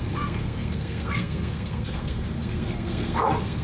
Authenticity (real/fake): fake